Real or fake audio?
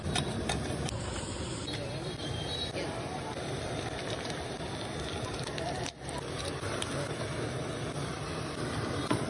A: real